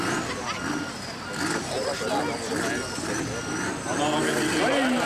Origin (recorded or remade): recorded